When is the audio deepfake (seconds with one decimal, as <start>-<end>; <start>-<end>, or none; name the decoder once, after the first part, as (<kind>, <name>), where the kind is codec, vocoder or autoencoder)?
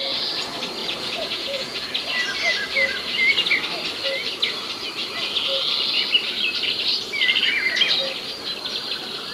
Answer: 0.8-1.9 (vocoder, Vocos)